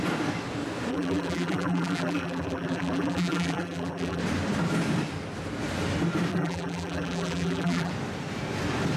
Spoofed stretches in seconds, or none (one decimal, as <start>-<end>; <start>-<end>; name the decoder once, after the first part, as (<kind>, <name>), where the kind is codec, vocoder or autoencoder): 0.9-4.2 (vocoder, BigVGAN v2); 6.3-7.9